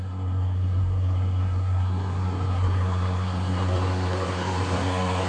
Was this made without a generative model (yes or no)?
no